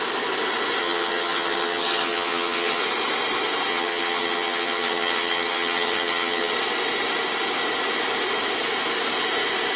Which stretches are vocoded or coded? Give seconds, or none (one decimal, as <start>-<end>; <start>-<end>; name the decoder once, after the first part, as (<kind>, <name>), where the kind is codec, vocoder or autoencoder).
0.8-2.8 (vocoder, HiFi-GAN); 3.7-6.5